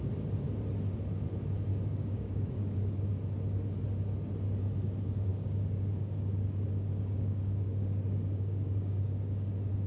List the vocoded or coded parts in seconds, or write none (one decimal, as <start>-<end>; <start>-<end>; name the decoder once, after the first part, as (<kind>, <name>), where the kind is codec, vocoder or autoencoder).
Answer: 1.7-3.1 (codec, DAC); 5.3-9.5